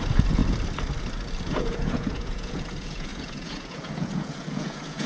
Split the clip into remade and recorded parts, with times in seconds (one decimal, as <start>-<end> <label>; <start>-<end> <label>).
0.0-0.4 remade; 0.4-1.5 recorded; 1.5-5.1 remade